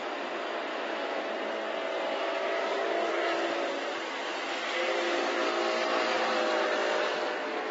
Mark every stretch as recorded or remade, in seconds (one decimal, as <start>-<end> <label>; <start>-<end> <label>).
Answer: 0.0-0.7 recorded; 0.7-1.3 remade; 1.3-2.1 recorded; 2.1-2.7 remade; 2.7-7.1 recorded; 7.1-7.7 remade